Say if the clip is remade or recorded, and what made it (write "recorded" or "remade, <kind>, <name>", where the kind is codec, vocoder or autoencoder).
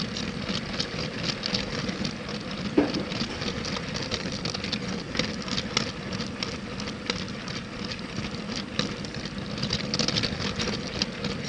recorded